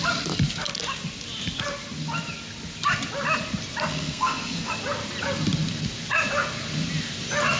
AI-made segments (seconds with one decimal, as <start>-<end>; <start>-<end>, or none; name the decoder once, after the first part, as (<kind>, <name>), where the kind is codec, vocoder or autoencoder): 3.9-4.7 (codec, SNAC)